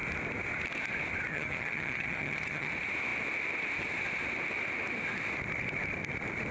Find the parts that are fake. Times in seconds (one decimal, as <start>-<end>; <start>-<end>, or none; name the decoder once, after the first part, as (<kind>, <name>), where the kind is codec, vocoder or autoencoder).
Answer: 1.3-2.7 (vocoder, HiFi-GAN)